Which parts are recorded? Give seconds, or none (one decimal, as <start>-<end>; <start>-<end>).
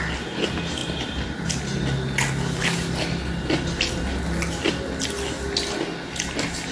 0.0-0.8; 1.5-6.7